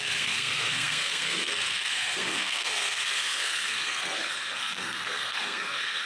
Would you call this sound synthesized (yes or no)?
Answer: yes